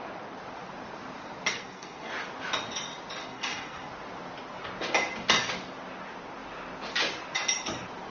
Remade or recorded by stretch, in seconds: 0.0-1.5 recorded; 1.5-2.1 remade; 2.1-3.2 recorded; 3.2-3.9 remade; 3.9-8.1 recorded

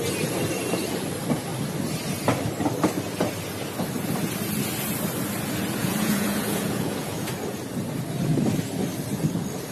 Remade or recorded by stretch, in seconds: 0.0-5.8 recorded; 5.8-7.3 remade; 7.3-9.7 recorded

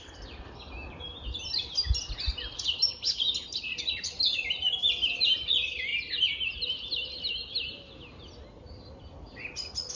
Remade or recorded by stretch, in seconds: 0.0-9.9 recorded

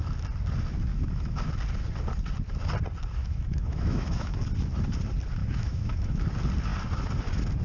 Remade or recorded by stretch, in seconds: 0.0-0.9 recorded; 0.9-1.4 remade; 1.4-3.2 recorded; 3.2-4.4 remade; 4.4-5.4 recorded; 5.4-6.2 remade; 6.2-7.6 recorded

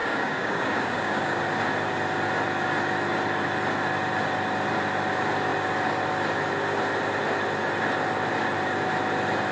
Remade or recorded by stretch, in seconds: 0.0-1.4 remade; 1.4-9.5 recorded

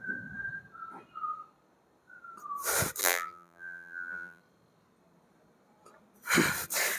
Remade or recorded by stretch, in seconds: 0.0-3.0 recorded; 3.0-4.4 remade; 4.4-7.0 recorded

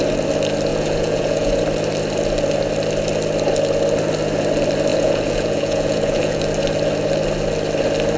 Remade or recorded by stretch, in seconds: 0.0-0.7 recorded; 0.7-1.6 remade; 1.6-4.9 recorded; 4.9-6.4 remade; 6.4-8.2 recorded

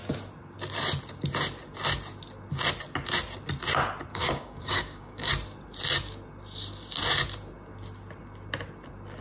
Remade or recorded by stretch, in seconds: 0.0-4.1 recorded; 4.1-5.3 remade; 5.3-9.2 recorded